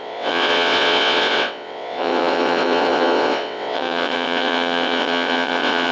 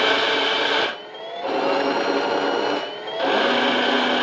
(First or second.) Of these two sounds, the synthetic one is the first